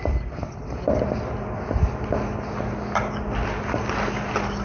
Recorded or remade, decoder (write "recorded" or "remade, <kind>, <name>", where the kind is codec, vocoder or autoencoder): recorded